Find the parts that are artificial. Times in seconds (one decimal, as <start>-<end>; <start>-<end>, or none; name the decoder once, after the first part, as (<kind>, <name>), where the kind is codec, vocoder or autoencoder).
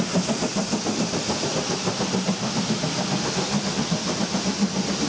none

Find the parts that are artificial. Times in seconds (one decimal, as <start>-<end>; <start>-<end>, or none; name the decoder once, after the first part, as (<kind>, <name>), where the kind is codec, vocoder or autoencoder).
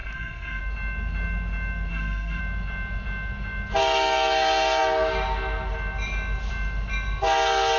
0.0-0.6 (codec, SNAC); 1.9-2.4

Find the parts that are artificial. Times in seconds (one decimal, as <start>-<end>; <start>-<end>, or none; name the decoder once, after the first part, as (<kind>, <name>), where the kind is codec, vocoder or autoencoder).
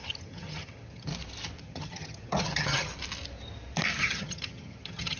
0.0-1.1 (vocoder, HiFi-GAN); 1.6-2.9; 4.0-5.2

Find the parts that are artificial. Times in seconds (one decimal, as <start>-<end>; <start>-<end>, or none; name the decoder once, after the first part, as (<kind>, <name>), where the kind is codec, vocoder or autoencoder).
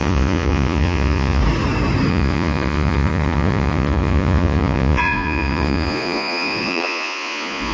0.0-1.4 (vocoder, Vocos); 2.1-7.7